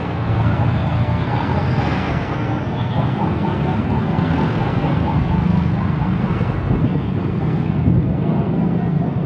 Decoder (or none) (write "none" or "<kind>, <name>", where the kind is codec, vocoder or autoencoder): codec, SNAC